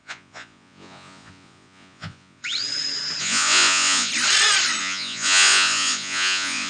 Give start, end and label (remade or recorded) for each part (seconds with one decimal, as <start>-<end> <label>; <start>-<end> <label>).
0.0-2.4 remade; 2.4-3.2 recorded; 3.2-4.1 remade; 4.1-4.8 recorded; 4.8-6.7 remade